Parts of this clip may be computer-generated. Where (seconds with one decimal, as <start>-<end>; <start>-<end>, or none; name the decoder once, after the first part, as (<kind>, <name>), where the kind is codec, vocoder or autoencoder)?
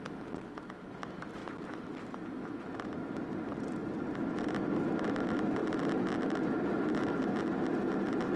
none